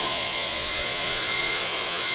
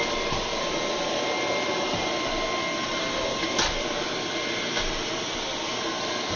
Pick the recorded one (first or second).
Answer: second